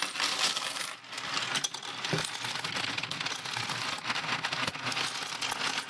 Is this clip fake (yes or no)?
no